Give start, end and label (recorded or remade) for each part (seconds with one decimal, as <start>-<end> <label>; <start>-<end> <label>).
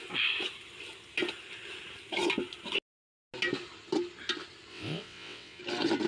0.0-4.7 recorded; 4.7-5.6 remade; 5.6-6.1 recorded